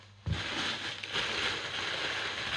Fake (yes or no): no